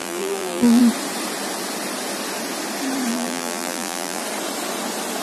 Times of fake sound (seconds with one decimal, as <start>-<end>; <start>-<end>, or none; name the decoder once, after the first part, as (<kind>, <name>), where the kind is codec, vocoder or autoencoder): 0.0-0.8 (vocoder, BigVGAN v2); 3.1-4.2